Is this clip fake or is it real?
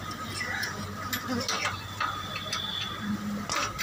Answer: real